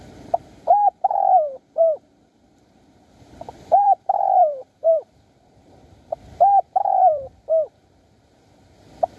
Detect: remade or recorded remade